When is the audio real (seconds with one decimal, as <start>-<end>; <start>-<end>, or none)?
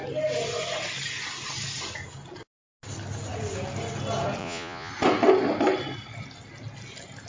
0.0-4.4; 4.9-7.3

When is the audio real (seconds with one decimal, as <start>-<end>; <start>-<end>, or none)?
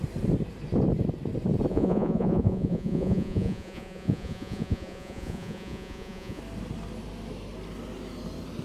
0.0-1.7; 6.4-8.6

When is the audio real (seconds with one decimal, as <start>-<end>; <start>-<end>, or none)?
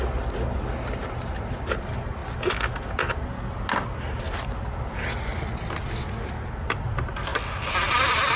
0.0-8.4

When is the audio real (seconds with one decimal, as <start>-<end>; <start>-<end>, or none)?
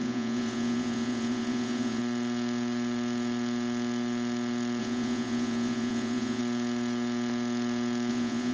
2.0-4.8; 6.4-8.1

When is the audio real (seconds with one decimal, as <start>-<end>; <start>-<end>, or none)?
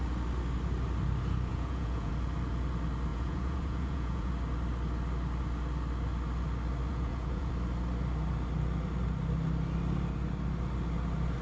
0.0-1.5; 2.1-3.1; 4.3-6.9; 7.5-11.4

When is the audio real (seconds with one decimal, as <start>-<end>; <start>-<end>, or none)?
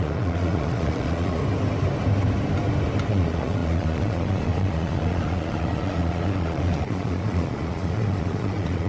1.4-3.1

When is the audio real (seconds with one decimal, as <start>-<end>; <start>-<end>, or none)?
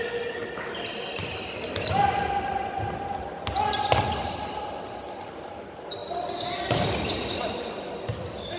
0.0-8.6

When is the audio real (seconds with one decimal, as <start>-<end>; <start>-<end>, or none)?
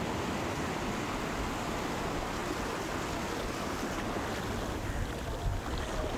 0.0-6.2